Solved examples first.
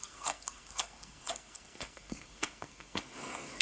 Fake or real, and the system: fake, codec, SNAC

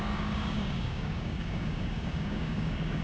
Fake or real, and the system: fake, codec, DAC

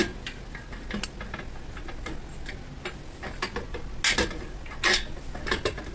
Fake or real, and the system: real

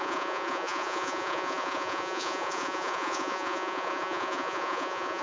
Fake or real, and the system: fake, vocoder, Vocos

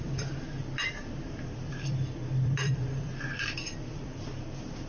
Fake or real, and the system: fake, vocoder, BigVGAN v2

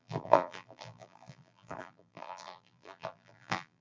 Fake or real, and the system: fake, vocoder, BigVGAN v2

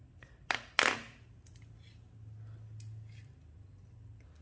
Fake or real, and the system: real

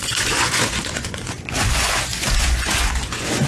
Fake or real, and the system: fake, vocoder, Vocos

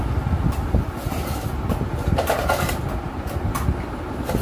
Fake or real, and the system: real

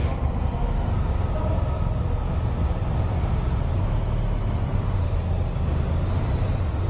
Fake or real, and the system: real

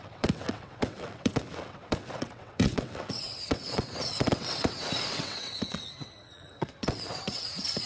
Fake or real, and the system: fake, vocoder, WaveNeXt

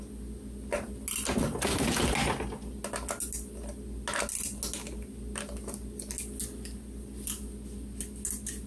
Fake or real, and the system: real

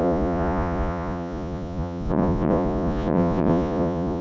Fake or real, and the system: fake, vocoder, Vocos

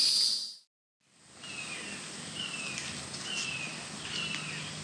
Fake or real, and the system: real